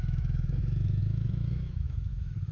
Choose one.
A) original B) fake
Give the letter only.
B